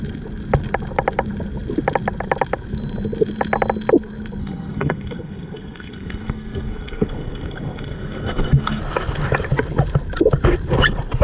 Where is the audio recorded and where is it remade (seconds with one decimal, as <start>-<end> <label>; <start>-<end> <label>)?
0.0-4.4 recorded; 4.4-8.8 remade; 8.8-11.2 recorded